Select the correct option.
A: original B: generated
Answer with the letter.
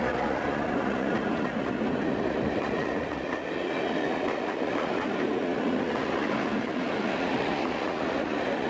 B